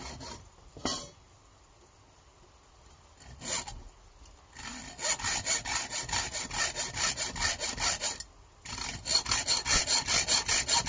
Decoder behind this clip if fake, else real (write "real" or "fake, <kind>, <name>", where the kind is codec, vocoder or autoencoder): real